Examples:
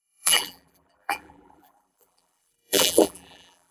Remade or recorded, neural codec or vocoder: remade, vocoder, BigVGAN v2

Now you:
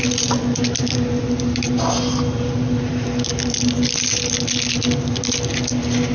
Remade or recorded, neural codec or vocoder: recorded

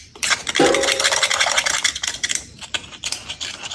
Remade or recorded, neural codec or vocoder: remade, vocoder, BigVGAN v2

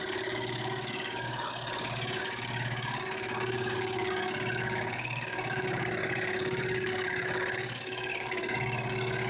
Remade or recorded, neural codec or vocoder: remade, codec, DAC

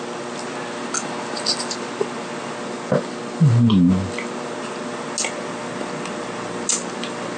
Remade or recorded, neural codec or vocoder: recorded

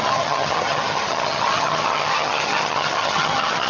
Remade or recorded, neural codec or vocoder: remade, vocoder, HiFi-GAN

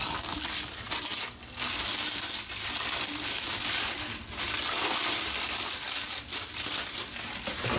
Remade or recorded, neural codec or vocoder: recorded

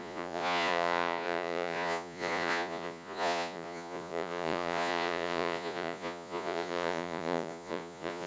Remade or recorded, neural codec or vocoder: remade, vocoder, Vocos